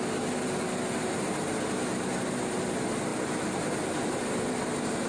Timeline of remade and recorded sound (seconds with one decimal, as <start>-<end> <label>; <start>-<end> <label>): 0.0-5.1 recorded